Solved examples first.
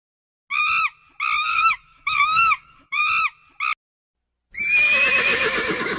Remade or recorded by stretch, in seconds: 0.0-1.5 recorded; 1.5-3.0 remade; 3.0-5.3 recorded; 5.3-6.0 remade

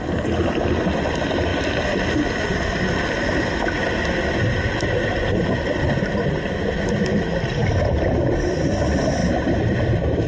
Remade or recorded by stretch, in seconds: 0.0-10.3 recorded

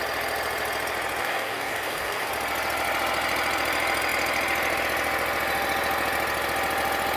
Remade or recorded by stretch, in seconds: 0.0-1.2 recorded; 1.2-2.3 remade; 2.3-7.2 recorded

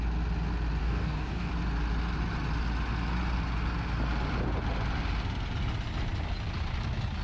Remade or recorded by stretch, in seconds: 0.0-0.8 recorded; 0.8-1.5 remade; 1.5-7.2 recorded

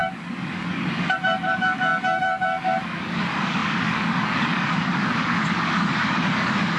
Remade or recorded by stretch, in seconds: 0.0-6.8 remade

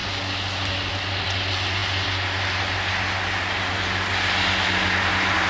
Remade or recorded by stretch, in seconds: 0.0-5.5 recorded

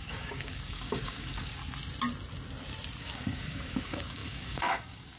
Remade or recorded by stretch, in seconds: 0.0-1.6 remade; 1.6-3.0 recorded; 3.0-5.2 remade

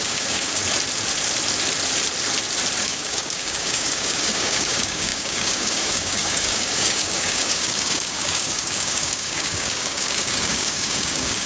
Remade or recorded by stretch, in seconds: 0.0-0.6 remade; 0.6-2.8 recorded; 2.8-11.5 remade